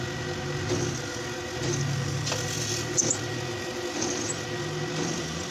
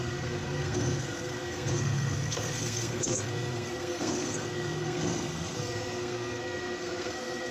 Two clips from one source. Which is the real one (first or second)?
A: first